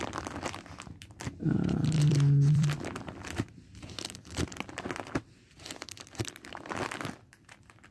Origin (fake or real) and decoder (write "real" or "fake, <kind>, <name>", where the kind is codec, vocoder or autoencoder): fake, vocoder, BigVGAN v2